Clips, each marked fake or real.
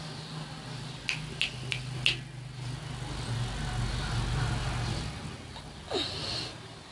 real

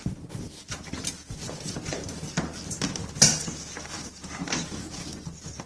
real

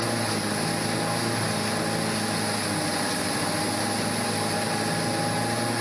real